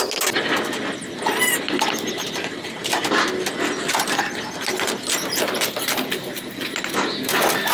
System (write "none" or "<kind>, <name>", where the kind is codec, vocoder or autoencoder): none